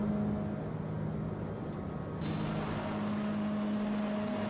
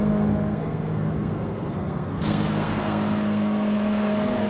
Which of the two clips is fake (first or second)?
second